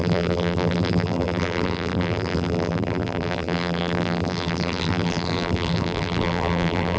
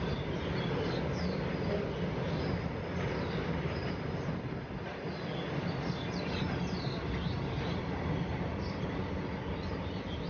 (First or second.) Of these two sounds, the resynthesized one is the first